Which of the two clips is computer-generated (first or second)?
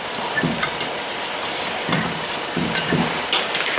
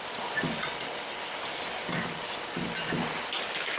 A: first